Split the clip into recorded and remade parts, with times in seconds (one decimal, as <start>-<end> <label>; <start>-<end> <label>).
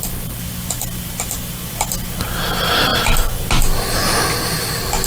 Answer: 0.0-5.1 recorded